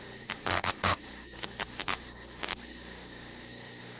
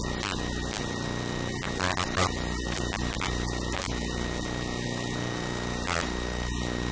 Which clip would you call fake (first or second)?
first